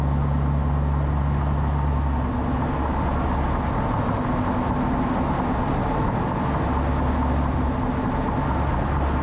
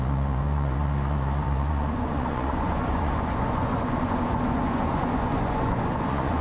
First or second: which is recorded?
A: first